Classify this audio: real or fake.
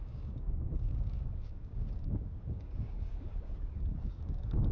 fake